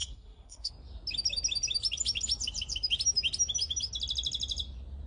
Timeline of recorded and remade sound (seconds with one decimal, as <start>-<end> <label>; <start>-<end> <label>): 0.0-0.7 remade; 0.7-5.1 recorded